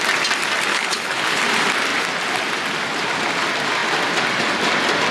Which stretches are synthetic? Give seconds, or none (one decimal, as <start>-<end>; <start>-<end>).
0.7-1.4

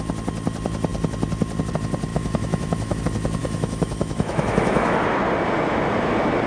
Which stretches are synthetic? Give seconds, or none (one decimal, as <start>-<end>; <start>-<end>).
2.1-3.0; 3.4-4.9